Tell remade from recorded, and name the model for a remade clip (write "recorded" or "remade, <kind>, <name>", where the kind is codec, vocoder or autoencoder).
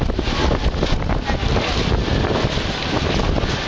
recorded